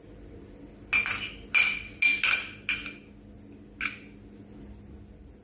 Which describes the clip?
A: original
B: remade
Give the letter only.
A